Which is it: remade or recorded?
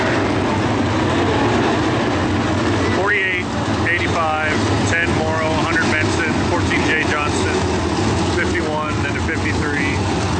recorded